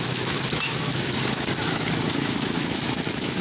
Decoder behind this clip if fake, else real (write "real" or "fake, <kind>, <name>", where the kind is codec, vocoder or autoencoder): fake, autoencoder, DAC-VAE